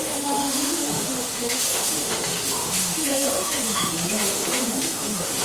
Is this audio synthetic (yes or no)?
yes